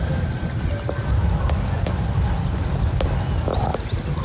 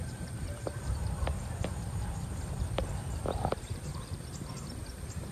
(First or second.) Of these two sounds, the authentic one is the first